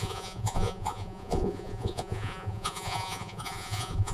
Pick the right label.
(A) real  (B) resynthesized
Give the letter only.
B